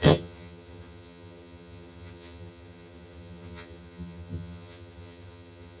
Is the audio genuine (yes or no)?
no